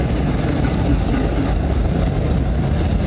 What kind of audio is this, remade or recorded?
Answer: recorded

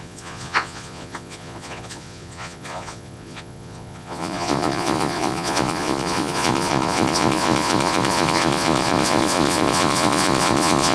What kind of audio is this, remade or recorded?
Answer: remade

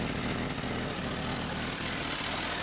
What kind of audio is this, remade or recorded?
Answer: recorded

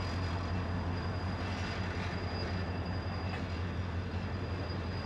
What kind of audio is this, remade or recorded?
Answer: recorded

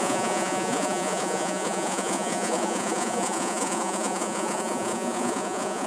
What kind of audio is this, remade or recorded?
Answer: remade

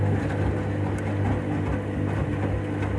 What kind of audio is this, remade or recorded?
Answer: recorded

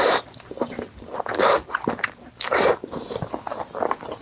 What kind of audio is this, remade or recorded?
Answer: recorded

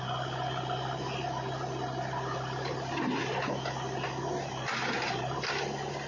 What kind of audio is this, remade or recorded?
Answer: recorded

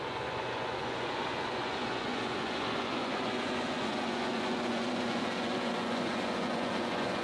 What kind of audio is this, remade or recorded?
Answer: remade